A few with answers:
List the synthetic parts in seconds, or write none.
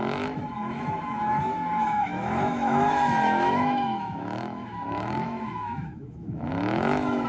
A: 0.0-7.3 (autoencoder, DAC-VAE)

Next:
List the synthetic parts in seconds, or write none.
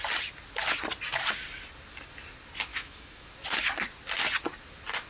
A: 2.7-3.3 (autoencoder, DAC-VAE)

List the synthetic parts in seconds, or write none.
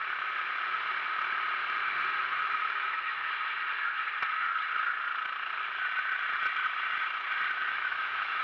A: 2.3-3.3 (autoencoder, DAC-VAE); 7.6-8.4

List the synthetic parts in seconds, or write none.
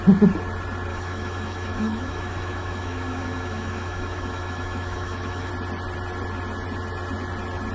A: 0.9-5.5 (autoencoder, DAC-VAE)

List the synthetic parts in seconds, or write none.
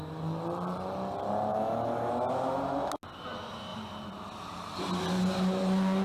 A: 1.5-2.1 (autoencoder, DAC-VAE)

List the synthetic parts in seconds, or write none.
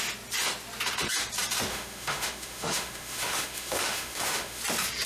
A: 1.7-4.6 (autoencoder, DAC-VAE)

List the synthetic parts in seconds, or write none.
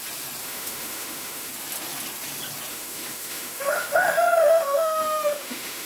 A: 0.4-1.5 (autoencoder, DAC-VAE); 2.7-5.9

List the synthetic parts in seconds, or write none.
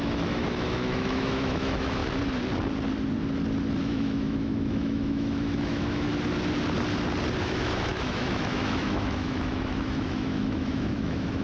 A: 0.0-2.0 (autoencoder, DAC-VAE); 3.8-6.1; 7.4-11.4